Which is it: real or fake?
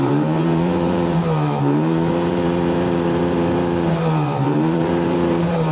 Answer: fake